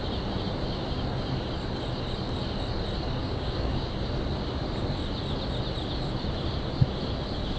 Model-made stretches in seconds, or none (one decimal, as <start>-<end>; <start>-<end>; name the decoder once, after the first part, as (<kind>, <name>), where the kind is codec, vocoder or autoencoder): 3.2-3.9 (codec, DAC)